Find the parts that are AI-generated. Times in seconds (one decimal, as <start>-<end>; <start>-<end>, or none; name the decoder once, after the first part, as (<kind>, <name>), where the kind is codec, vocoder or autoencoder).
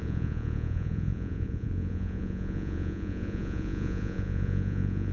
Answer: 0.0-5.1 (vocoder, Vocos)